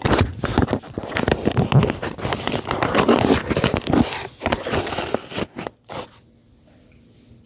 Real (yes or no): yes